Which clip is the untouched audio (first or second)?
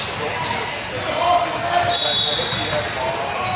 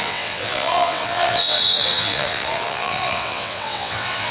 first